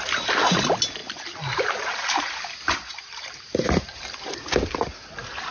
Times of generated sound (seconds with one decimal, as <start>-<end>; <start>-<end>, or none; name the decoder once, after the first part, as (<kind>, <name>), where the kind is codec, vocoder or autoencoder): 1.0-2.3 (vocoder, BigVGAN v2); 2.9-4.0